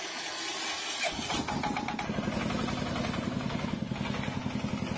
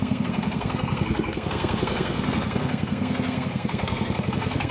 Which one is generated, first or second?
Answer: second